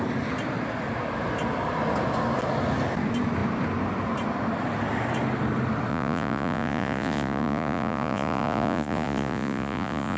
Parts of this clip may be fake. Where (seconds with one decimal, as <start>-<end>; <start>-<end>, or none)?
5.9-10.2